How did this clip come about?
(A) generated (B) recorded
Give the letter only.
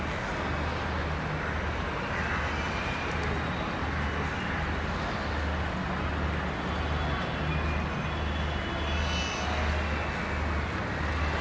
B